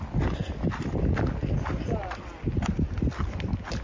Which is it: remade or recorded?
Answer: recorded